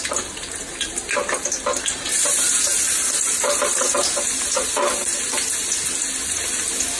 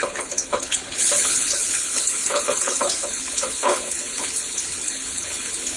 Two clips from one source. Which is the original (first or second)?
first